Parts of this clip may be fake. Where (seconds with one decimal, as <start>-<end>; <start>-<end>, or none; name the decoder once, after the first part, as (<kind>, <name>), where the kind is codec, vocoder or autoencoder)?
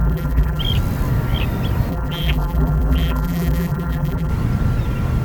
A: 0.0-0.6 (vocoder, BigVGAN v2); 1.9-4.3